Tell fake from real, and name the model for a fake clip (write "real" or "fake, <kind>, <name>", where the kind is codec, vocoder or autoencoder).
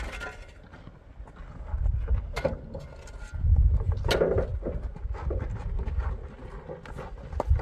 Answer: real